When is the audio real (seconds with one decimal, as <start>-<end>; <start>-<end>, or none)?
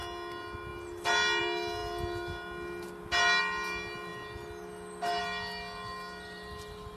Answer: 0.0-7.0